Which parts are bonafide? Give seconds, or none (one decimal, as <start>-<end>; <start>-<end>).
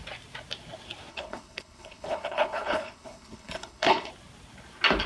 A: 0.0-1.1; 4.1-5.1